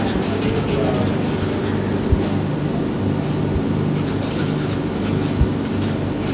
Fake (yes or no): no